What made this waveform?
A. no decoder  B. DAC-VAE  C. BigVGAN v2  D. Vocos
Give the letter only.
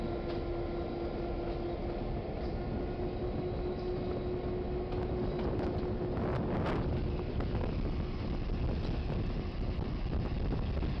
A